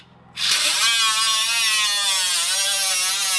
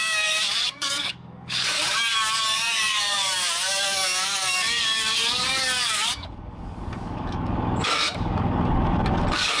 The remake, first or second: second